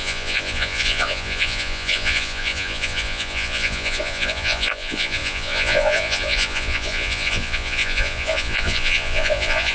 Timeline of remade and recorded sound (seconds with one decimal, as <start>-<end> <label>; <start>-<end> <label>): 0.0-9.7 remade